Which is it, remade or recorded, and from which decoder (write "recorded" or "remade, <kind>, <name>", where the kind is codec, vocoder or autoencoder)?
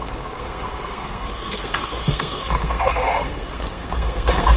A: remade, codec, SNAC